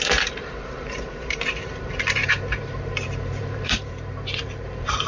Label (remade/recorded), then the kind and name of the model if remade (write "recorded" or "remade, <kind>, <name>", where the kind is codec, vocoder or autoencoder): remade, vocoder, BigVGAN v2